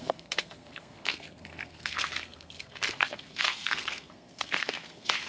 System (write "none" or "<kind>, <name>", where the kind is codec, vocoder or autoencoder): codec, SNAC